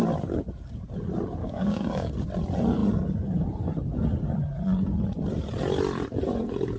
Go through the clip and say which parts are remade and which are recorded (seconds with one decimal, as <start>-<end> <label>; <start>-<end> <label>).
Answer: 0.0-1.4 recorded; 1.4-2.1 remade; 2.1-6.8 recorded